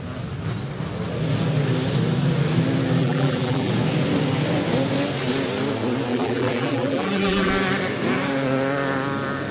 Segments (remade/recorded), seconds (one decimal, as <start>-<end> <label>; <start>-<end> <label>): 0.0-3.0 recorded; 3.0-3.7 remade; 3.7-6.1 recorded; 6.1-7.5 remade; 7.5-9.5 recorded